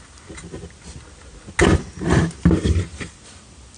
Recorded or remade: recorded